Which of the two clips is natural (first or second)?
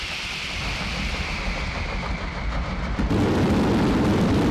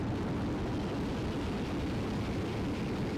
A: second